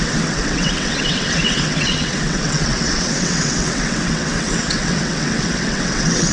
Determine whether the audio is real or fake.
fake